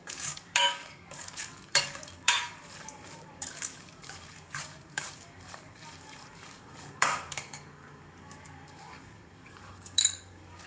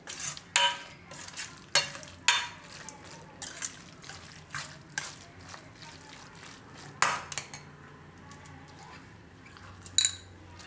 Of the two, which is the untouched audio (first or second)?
second